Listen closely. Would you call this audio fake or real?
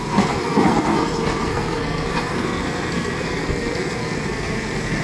fake